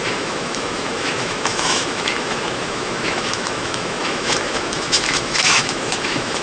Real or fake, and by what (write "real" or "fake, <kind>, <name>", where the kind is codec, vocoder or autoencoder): fake, autoencoder, DAC-VAE